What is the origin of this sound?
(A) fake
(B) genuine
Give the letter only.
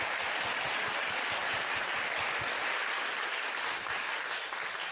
B